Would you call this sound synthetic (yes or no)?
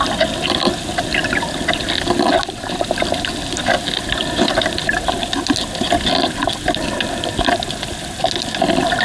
no